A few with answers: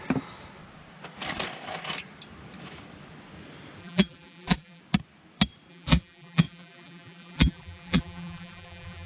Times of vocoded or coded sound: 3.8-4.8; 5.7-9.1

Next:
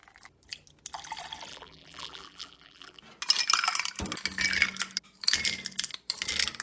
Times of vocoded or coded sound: 1.5-3.0

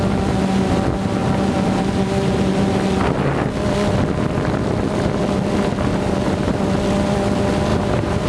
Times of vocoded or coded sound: 5.9-6.6; 7.7-8.3

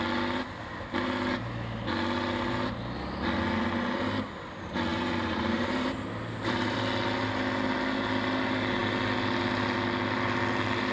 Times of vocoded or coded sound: 4.9-6.8

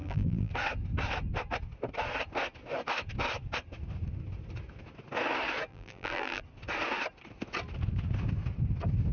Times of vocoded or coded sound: 0.0-0.5; 5.7-6.4

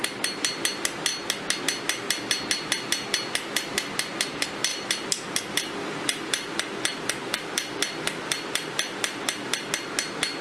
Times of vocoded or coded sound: 4.7-9.7

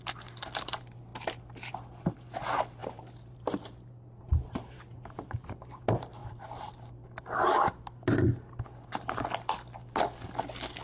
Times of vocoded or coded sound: 2.8-5.8; 6.2-6.7